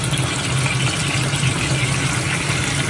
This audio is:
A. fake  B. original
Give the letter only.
B